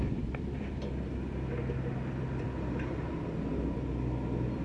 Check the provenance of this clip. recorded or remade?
remade